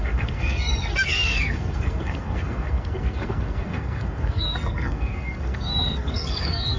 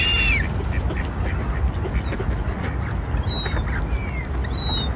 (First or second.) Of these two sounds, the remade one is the first